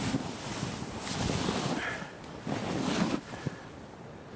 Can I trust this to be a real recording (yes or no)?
yes